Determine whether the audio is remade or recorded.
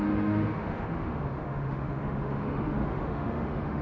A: remade